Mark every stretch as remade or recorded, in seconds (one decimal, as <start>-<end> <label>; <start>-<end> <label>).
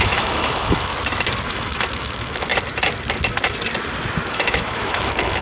0.0-0.9 remade; 0.9-1.5 recorded; 1.5-2.5 remade; 2.5-4.3 recorded; 4.3-5.4 remade